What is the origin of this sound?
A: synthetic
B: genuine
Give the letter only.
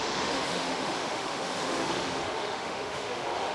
A